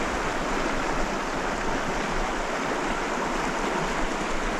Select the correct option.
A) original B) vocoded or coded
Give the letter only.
A